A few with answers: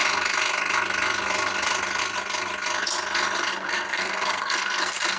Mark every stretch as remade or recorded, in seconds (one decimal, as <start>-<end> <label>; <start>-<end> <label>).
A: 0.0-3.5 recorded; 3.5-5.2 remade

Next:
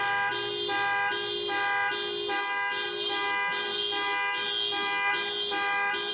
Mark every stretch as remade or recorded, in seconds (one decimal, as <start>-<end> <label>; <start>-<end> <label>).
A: 0.0-6.1 recorded

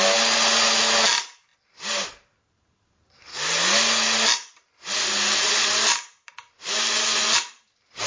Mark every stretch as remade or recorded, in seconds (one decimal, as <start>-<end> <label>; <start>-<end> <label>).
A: 0.0-8.1 recorded

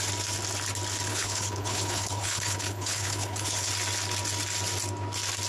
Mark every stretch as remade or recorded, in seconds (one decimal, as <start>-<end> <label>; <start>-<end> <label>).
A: 0.0-1.1 recorded; 1.1-3.7 remade; 3.7-5.5 recorded

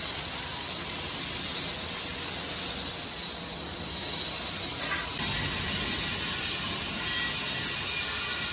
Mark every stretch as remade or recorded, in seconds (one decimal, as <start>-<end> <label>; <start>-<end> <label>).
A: 0.0-8.5 recorded

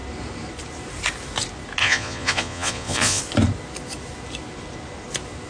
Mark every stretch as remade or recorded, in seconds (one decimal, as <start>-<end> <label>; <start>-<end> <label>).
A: 0.0-1.8 recorded; 1.8-3.2 remade; 3.2-5.5 recorded